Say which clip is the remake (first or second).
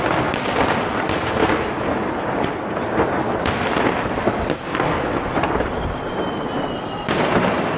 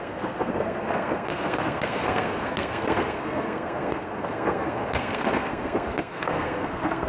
second